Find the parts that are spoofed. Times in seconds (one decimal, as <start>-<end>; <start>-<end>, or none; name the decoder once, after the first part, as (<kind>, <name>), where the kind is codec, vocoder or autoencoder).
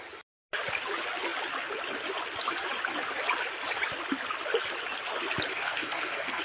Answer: 5.5-6.4 (codec, SNAC)